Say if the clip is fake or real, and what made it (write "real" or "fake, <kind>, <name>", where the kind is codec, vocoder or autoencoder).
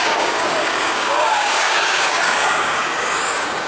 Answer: fake, codec, DAC